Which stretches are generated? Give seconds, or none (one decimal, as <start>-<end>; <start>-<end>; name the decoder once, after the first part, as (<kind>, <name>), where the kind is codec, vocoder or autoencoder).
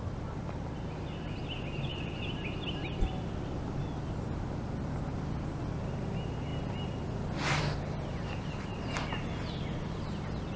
none